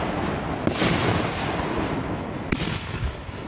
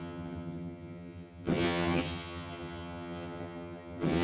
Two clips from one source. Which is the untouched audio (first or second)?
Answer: first